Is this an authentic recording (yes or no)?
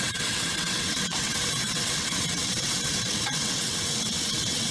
no